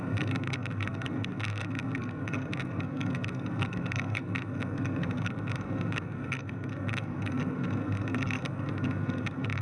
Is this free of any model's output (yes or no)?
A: no